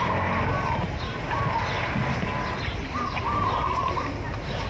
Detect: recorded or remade recorded